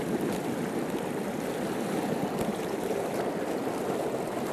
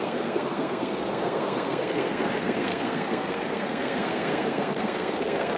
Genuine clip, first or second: first